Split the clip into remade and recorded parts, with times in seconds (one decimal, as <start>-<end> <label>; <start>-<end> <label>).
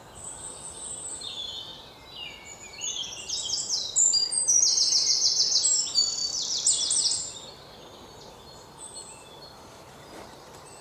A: 0.0-0.8 recorded; 0.8-1.7 remade; 1.7-2.6 recorded; 2.6-3.0 remade; 3.0-5.6 recorded; 5.6-6.2 remade; 6.2-8.3 recorded; 8.3-10.8 remade